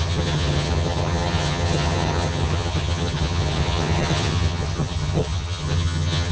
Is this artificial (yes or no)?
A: yes